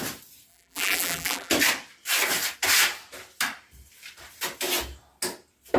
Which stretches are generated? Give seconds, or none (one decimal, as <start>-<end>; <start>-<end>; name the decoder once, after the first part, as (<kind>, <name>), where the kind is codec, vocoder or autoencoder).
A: 0.5-1.5 (vocoder, BigVGAN v2)